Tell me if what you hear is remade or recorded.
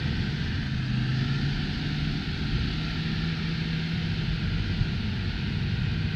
recorded